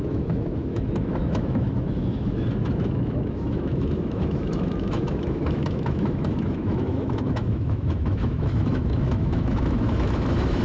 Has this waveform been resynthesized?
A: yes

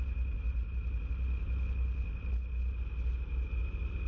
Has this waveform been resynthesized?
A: no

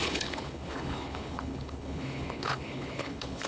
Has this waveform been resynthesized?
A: yes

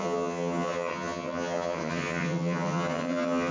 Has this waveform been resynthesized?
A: yes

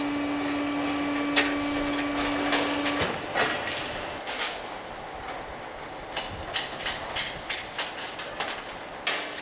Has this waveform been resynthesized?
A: no